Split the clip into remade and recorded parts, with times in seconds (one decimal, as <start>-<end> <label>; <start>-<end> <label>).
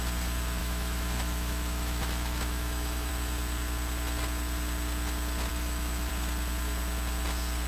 0.0-0.6 recorded; 0.6-3.1 remade; 3.1-5.5 recorded; 5.5-6.1 remade; 6.1-7.7 recorded